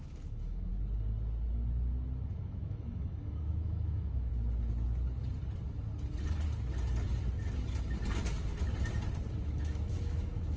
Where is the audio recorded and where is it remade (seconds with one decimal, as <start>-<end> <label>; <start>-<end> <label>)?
0.0-0.7 remade; 0.7-2.3 recorded; 2.3-4.3 remade; 4.3-9.4 recorded; 9.4-10.6 remade